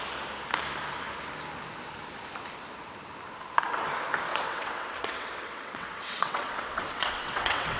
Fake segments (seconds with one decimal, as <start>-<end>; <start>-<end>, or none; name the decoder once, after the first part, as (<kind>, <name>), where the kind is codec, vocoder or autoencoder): 4.3-7.8 (vocoder, WaveNeXt)